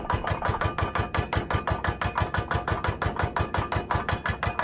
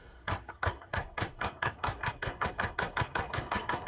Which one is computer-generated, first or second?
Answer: second